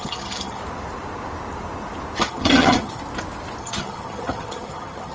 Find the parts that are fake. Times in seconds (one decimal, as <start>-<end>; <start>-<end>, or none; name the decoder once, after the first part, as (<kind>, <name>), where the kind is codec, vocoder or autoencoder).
0.0-0.6 (vocoder, HiFi-GAN); 2.2-3.0; 3.6-5.1